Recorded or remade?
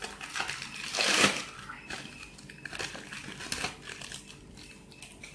recorded